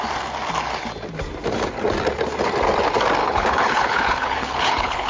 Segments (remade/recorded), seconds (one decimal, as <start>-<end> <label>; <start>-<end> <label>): 0.0-3.2 recorded; 3.2-5.1 remade